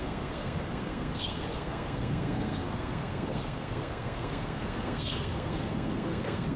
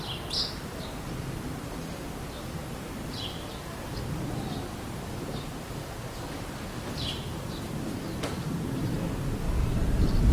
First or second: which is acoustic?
second